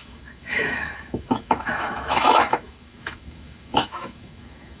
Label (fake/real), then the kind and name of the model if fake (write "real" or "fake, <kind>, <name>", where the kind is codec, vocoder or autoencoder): fake, autoencoder, DAC-VAE